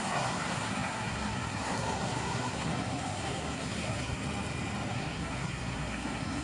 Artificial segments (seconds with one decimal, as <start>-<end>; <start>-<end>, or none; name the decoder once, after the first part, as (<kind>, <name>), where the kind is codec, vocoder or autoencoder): 0.0-4.2 (codec, SNAC); 4.9-6.4